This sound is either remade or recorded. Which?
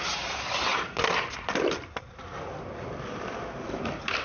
recorded